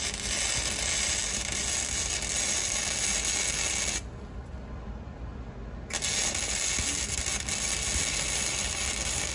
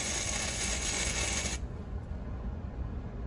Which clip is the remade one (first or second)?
second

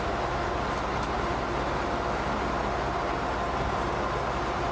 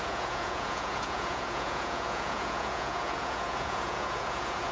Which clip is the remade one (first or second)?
second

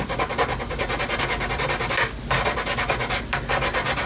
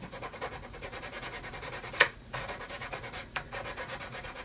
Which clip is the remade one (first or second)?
second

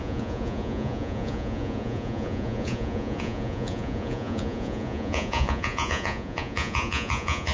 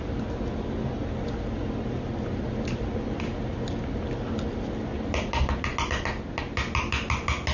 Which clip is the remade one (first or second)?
first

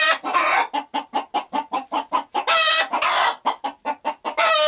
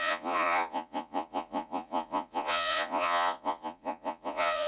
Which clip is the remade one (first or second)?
second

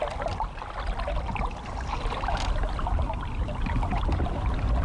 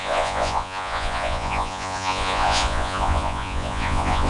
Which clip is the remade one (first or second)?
second